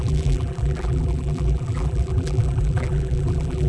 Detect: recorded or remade remade